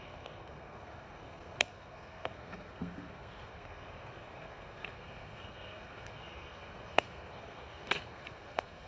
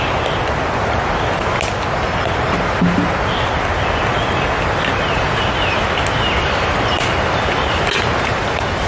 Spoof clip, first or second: first